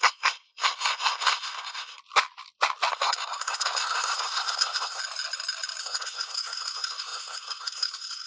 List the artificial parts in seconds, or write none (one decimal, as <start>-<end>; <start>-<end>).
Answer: 0.0-2.0; 2.9-5.0; 5.8-8.3